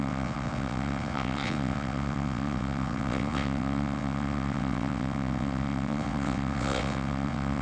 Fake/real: fake